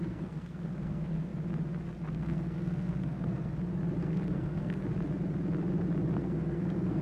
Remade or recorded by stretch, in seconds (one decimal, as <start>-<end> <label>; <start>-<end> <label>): 0.0-1.3 remade; 1.3-2.1 recorded; 2.1-3.5 remade; 3.5-4.0 recorded; 4.0-4.8 remade; 4.8-6.2 recorded; 6.2-7.0 remade